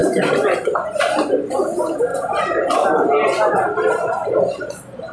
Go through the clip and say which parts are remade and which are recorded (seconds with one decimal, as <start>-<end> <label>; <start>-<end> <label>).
0.0-5.1 recorded